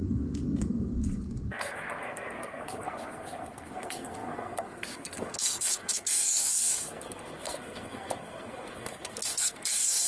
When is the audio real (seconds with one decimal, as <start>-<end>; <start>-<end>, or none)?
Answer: none